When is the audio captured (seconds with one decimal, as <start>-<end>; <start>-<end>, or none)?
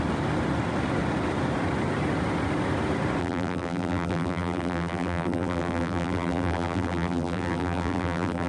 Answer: 0.0-3.2